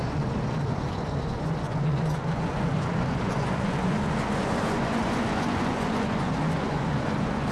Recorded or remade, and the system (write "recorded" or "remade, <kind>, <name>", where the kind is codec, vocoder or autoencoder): remade, vocoder, Vocos